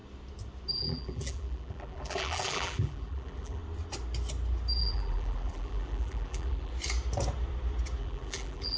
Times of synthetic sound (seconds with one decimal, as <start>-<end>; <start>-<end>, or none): 0.7-3.6; 4.8-6.7; 8.0-8.8